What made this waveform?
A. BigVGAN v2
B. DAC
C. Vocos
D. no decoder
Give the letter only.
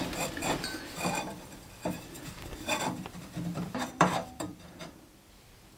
A